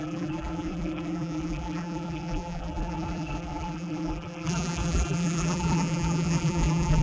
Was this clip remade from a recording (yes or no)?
yes